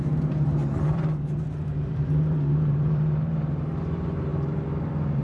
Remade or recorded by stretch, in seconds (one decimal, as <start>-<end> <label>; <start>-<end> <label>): 0.0-5.2 remade